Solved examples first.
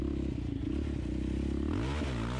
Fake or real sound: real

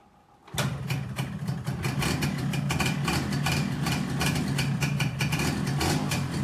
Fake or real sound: real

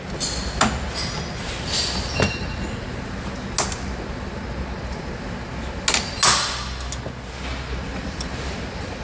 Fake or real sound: real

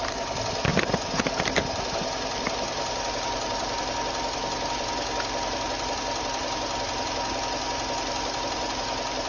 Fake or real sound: real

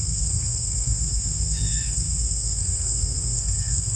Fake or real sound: fake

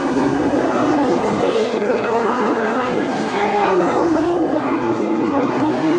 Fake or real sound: fake